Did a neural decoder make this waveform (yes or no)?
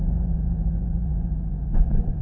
yes